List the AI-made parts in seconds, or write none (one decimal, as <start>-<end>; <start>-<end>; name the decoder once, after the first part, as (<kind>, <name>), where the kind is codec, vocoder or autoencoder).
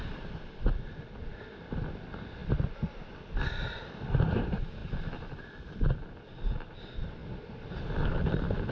none